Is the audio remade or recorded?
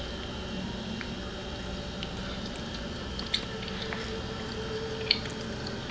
recorded